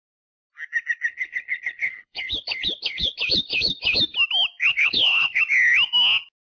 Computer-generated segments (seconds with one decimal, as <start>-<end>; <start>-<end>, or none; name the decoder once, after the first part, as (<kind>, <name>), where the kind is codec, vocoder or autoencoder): 1.1-4.0 (codec, HILCodec); 4.7-5.4